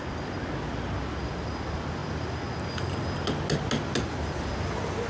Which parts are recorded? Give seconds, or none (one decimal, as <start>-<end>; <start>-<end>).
0.0-5.1